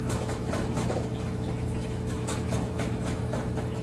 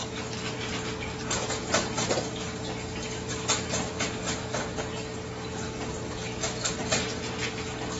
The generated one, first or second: first